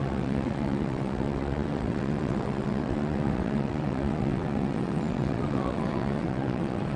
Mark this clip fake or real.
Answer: fake